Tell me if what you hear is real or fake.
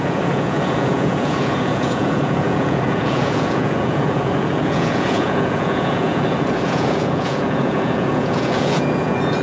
fake